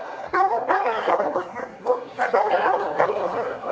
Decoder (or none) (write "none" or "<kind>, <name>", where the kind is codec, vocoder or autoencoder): codec, SNAC